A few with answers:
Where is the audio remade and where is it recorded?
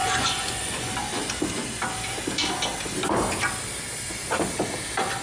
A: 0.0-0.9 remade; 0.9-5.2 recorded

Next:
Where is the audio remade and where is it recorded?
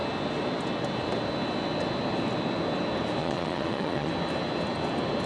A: 0.0-3.2 recorded; 3.2-4.1 remade; 4.1-5.3 recorded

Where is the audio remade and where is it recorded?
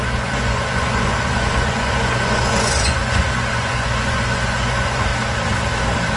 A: 0.0-5.1 remade; 5.1-6.2 recorded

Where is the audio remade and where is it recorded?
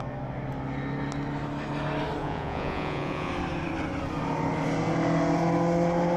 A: 0.0-2.2 recorded; 2.2-3.3 remade; 3.3-6.2 recorded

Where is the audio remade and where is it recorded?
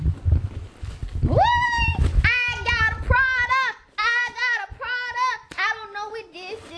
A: 0.0-6.8 recorded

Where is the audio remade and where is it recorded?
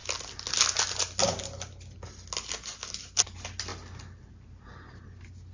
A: 0.0-5.5 recorded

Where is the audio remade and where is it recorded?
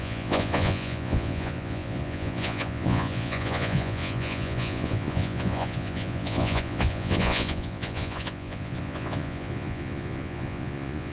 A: 0.0-11.1 remade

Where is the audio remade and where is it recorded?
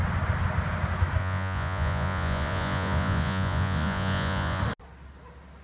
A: 0.0-1.2 recorded; 1.2-4.6 remade; 4.6-5.6 recorded